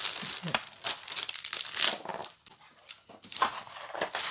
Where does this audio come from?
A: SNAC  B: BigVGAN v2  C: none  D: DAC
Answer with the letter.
C